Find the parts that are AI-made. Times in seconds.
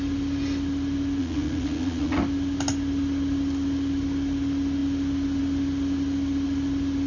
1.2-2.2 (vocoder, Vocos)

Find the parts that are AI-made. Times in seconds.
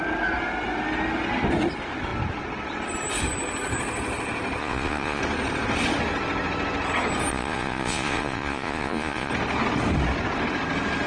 4.6-5.2 (vocoder, Vocos); 7.3-9.3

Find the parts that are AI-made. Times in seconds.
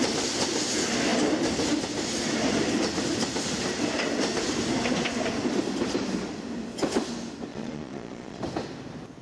7.5-8.4 (vocoder, Vocos)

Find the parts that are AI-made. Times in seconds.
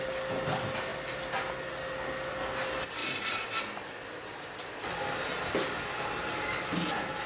none